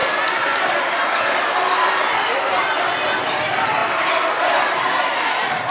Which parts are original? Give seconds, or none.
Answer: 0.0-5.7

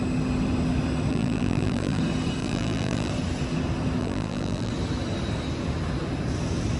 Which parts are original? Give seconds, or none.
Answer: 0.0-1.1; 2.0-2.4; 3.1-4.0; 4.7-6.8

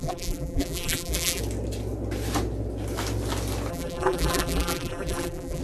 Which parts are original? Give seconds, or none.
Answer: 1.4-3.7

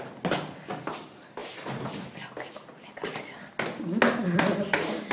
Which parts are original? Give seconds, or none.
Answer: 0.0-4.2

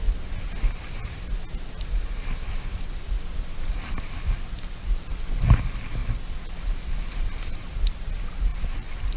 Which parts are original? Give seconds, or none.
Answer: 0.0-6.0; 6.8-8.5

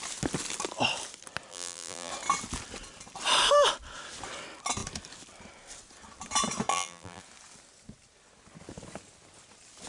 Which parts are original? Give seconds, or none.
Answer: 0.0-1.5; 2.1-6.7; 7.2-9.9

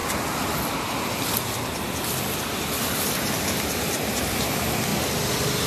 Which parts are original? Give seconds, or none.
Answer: 4.9-5.7

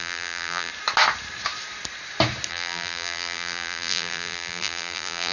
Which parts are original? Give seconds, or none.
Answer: 0.7-2.5